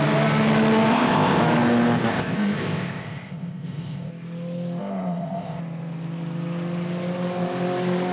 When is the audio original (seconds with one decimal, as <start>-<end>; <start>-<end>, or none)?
0.0-0.9; 1.4-2.1; 4.1-4.8; 5.6-8.1